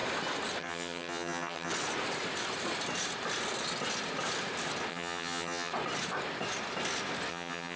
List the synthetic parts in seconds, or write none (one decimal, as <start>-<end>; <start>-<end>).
0.6-1.7; 4.9-5.7; 7.3-7.8